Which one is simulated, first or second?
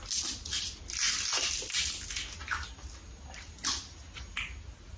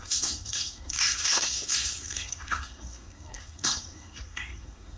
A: second